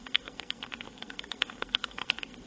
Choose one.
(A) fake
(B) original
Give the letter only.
A